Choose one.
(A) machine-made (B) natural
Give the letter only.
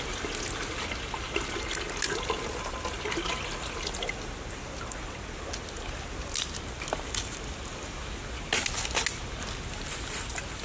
B